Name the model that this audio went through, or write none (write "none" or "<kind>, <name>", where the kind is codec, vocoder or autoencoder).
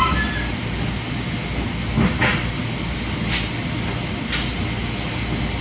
none